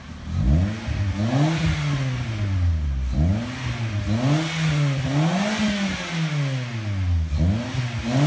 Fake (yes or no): no